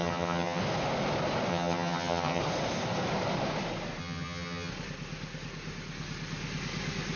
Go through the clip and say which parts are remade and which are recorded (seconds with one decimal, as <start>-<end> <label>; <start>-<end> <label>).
0.0-0.6 remade; 0.6-1.5 recorded; 1.5-2.4 remade; 2.4-4.0 recorded; 4.0-4.7 remade; 4.7-7.2 recorded